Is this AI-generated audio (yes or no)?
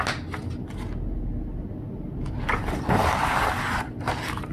no